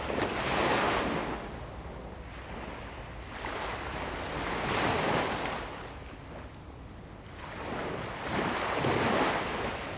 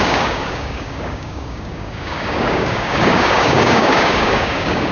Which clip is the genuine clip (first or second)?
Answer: first